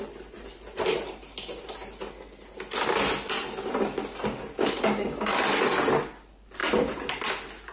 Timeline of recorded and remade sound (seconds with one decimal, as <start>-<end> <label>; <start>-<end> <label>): 0.0-7.7 recorded

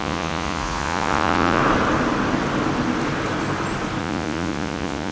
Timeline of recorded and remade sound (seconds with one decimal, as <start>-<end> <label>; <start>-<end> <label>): 0.0-1.6 remade; 1.6-4.0 recorded; 4.0-5.1 remade